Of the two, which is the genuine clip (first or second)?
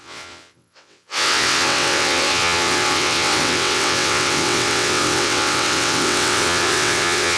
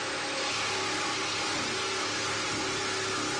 second